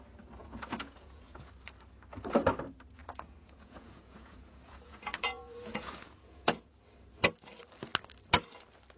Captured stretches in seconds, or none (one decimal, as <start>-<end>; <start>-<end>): 0.0-0.4; 1.5-3.0; 6.7-9.0